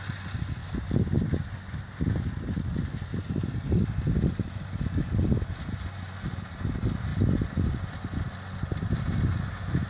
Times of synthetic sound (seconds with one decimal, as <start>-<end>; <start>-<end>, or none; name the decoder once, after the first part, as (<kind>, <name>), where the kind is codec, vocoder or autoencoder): none